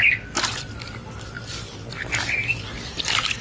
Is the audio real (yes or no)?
yes